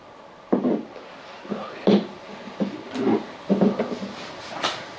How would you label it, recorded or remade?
recorded